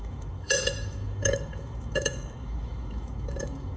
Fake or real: fake